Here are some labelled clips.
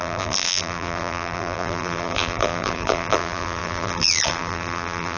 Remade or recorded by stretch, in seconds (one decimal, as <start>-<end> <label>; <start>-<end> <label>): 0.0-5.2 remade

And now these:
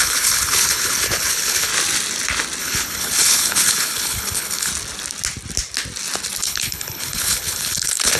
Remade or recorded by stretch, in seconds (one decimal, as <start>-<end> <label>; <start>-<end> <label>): 0.0-1.7 remade; 1.7-2.6 recorded; 2.6-4.7 remade; 4.7-6.4 recorded; 6.4-8.2 remade

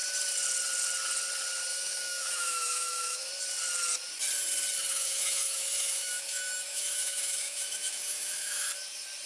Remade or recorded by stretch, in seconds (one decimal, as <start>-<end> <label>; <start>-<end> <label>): 0.0-1.7 recorded; 1.7-3.3 remade; 3.3-4.9 recorded; 4.9-8.7 remade; 8.7-9.3 recorded